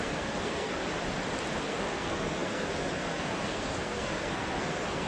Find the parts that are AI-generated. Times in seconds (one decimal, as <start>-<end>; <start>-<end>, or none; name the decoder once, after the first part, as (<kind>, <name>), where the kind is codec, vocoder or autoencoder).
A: 0.0-0.8 (codec, SNAC); 1.6-5.1